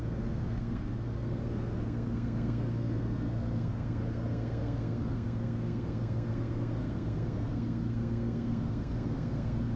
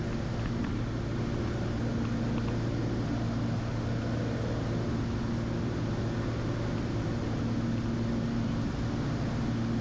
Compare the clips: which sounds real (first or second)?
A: second